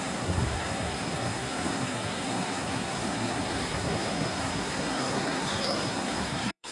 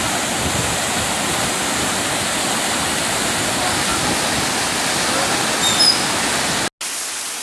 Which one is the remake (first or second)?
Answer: first